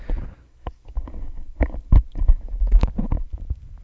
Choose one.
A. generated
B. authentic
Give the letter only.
B